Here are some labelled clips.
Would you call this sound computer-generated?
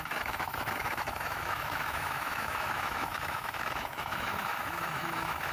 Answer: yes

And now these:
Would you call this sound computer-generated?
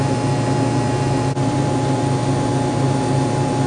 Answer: no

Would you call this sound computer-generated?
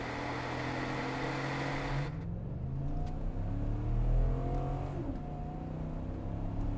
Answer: no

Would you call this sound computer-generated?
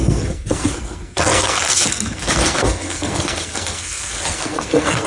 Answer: yes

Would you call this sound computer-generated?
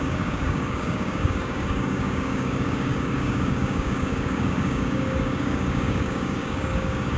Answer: yes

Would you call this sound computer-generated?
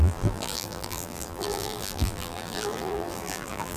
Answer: yes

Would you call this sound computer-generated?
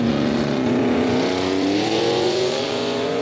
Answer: yes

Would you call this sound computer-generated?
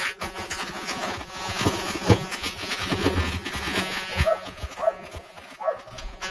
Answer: yes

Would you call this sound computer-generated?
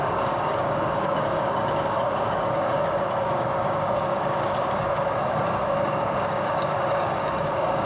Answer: yes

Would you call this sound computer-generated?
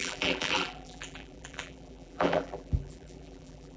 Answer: yes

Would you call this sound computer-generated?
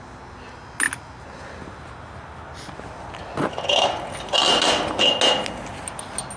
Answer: no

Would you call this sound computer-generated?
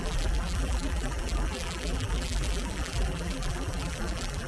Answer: yes